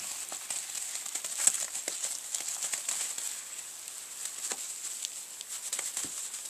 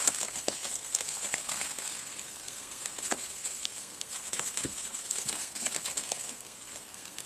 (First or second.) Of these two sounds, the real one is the first